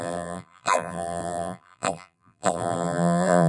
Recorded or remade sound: remade